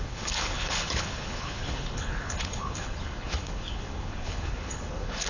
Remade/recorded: remade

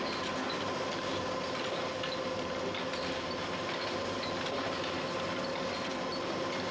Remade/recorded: recorded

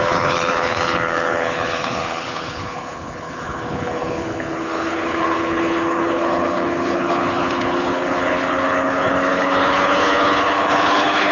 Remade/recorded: remade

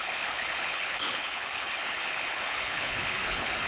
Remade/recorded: remade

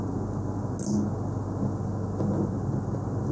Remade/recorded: recorded